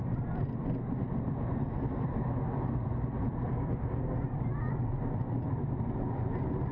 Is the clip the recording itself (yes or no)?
yes